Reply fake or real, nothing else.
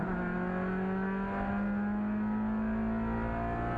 real